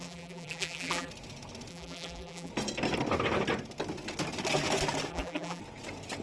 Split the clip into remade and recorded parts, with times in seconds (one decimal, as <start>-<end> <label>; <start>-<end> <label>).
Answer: 0.0-1.1 remade; 1.1-1.7 recorded; 1.7-2.5 remade; 2.5-5.1 recorded; 5.1-5.6 remade; 5.6-6.2 recorded

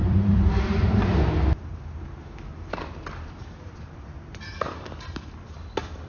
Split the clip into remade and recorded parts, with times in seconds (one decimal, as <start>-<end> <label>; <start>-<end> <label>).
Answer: 0.0-1.2 remade; 1.2-1.7 recorded; 1.7-5.4 remade; 5.4-6.1 recorded